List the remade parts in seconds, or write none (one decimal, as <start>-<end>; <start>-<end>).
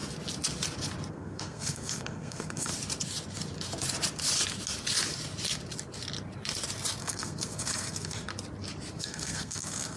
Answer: 1.1-2.7; 7.0-8.3; 9.0-10.0